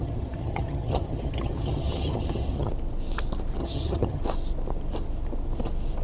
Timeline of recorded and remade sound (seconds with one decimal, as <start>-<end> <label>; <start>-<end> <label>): 0.0-2.7 remade; 2.7-3.6 recorded; 3.6-4.2 remade; 4.2-6.0 recorded